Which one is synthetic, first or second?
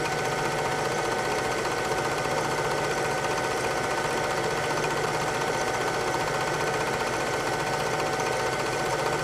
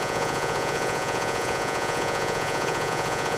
second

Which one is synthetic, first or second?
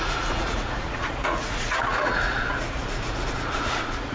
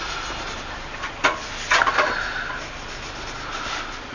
first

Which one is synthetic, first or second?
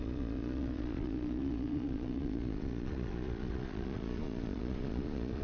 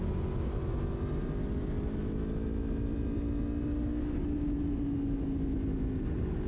first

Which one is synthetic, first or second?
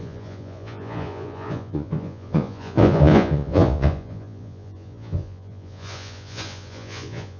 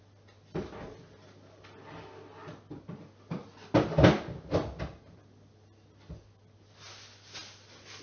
first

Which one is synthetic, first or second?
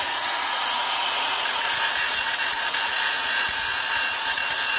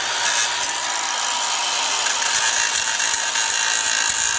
first